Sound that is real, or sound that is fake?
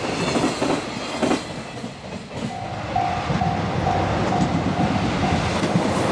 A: real